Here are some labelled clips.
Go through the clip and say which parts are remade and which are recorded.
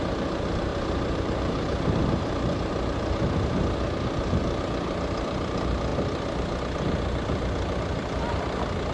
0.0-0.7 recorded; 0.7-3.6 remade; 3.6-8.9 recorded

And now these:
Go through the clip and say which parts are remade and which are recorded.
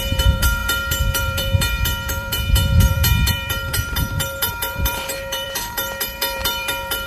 0.0-7.1 remade